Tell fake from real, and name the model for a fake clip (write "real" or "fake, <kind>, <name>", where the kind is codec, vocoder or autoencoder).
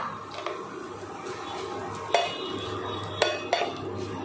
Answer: real